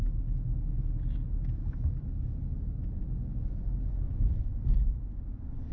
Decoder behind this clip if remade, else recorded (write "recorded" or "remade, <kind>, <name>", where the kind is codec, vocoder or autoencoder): recorded